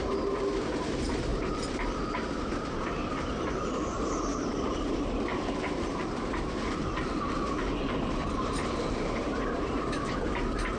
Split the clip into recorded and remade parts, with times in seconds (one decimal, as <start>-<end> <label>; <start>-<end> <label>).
0.0-1.3 recorded; 1.3-3.9 remade; 3.9-5.3 recorded; 5.3-10.2 remade; 10.2-10.8 recorded